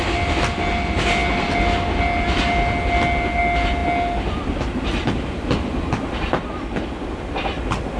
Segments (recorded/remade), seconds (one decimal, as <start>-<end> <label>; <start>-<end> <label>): 0.0-8.0 recorded